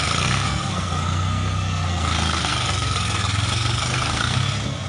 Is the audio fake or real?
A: fake